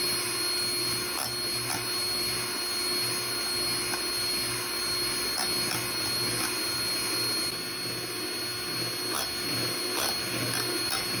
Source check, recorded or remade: recorded